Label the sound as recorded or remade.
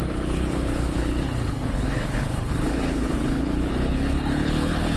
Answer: remade